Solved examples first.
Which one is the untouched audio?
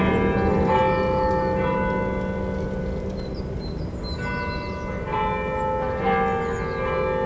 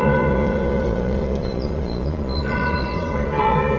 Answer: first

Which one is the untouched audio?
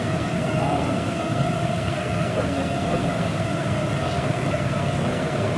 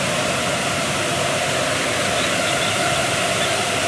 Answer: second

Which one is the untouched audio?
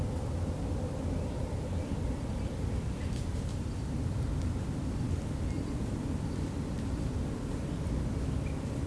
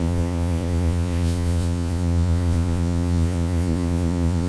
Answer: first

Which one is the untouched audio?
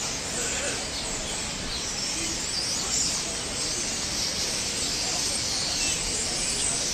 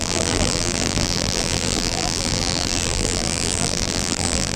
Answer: first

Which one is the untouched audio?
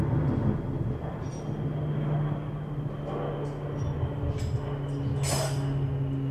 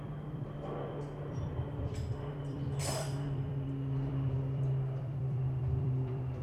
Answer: first